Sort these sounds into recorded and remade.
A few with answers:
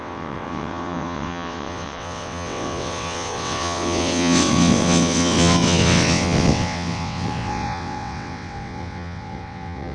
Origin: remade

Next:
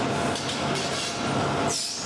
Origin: recorded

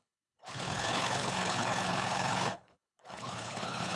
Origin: remade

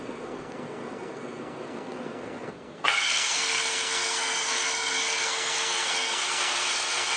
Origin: remade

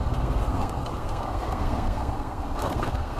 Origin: remade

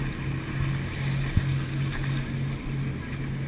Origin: recorded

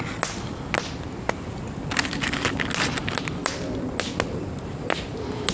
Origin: recorded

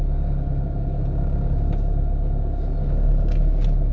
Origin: recorded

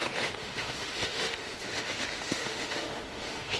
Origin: remade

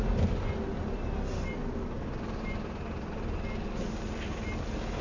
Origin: recorded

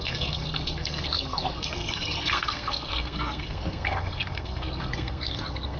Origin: remade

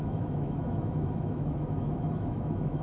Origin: remade